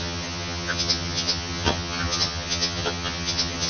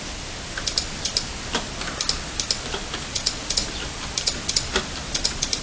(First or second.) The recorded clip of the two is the second